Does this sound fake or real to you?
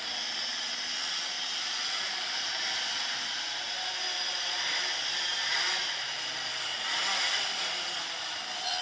real